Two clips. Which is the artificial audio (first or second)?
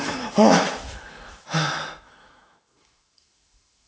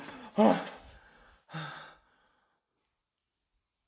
first